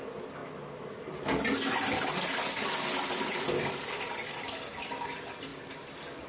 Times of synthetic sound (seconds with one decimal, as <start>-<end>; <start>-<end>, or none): none